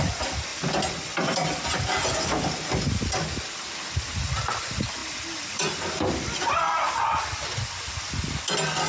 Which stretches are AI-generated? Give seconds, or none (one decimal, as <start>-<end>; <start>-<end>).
none